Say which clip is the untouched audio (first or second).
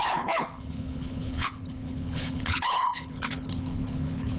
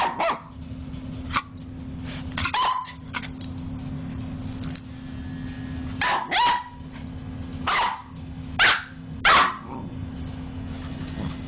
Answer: second